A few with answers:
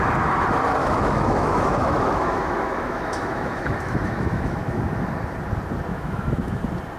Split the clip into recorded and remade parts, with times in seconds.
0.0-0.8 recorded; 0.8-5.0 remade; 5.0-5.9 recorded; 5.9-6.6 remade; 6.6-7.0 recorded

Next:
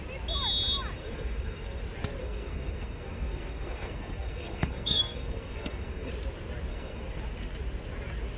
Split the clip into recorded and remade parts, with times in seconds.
0.0-1.0 recorded; 1.0-1.8 remade; 1.8-2.2 recorded; 2.2-6.1 remade; 6.1-6.7 recorded; 6.7-7.2 remade; 7.2-8.4 recorded

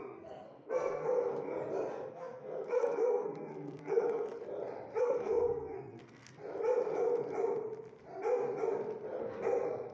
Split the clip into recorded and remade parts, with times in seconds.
0.0-1.3 remade; 1.3-2.1 recorded; 2.1-4.4 remade; 4.4-5.0 recorded; 5.0-6.4 remade; 6.4-9.2 recorded; 9.2-9.9 remade

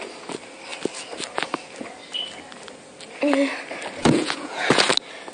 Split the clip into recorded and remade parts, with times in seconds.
0.0-4.0 recorded; 4.0-4.8 remade; 4.8-5.3 recorded